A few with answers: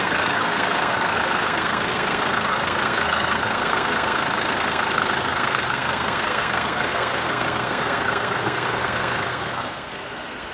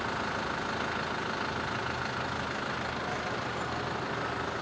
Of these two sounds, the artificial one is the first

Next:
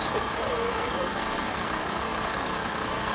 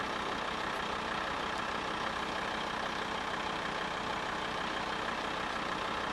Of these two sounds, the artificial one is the first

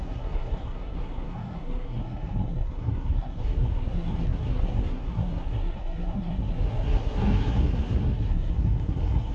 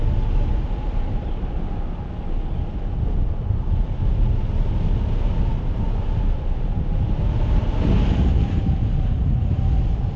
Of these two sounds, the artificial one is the first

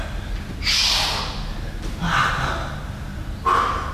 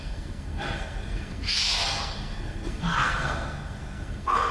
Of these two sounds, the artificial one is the second